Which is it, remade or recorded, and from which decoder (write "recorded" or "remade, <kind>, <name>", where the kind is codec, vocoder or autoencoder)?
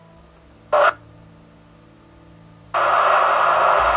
recorded